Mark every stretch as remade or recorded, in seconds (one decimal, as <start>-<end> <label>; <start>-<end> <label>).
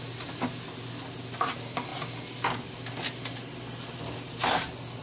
0.0-5.0 recorded